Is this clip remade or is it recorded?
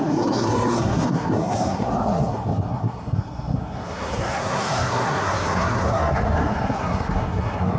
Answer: remade